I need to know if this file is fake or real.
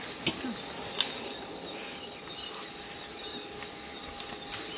real